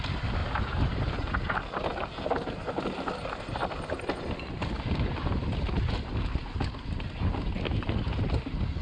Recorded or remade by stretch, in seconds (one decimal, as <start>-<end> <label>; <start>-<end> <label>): 0.0-0.4 recorded; 0.4-1.0 remade; 1.0-8.8 recorded